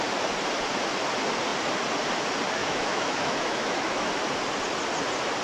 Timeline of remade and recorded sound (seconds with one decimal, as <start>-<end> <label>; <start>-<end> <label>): 0.0-2.6 recorded; 2.6-4.1 remade; 4.1-5.4 recorded